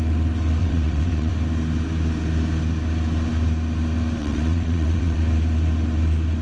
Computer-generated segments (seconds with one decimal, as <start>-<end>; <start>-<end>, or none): 0.6-1.3; 4.2-5.2